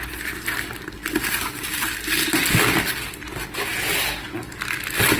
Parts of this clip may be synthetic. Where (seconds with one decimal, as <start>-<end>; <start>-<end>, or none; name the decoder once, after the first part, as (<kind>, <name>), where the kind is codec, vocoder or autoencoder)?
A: none